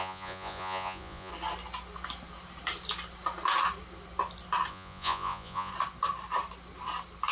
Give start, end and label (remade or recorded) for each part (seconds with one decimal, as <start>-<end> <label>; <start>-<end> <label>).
0.0-1.3 remade; 1.3-4.7 recorded; 4.7-5.7 remade; 5.7-7.3 recorded

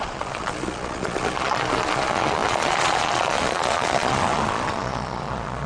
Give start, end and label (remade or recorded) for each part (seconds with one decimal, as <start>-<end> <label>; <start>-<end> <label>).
0.0-5.7 remade